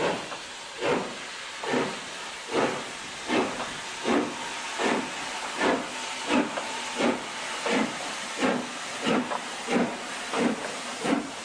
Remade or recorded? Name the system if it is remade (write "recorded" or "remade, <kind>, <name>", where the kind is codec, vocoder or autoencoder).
recorded